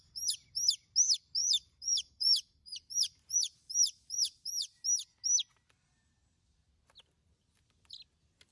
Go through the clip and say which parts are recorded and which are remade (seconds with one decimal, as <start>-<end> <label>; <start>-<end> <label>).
0.0-1.4 recorded; 1.4-4.8 remade; 4.8-8.5 recorded